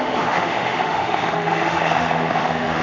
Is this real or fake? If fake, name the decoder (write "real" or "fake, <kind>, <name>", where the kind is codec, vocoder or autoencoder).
fake, autoencoder, DAC-VAE